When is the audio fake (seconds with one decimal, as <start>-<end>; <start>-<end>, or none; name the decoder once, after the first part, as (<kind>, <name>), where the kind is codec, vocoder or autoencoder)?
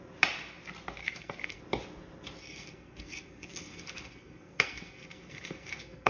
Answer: 1.0-1.6 (codec, SNAC); 2.4-6.1